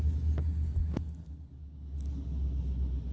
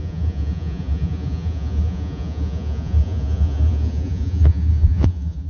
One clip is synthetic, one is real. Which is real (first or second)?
first